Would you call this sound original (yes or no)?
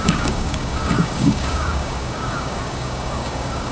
no